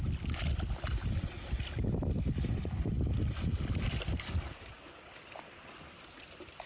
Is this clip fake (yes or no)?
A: yes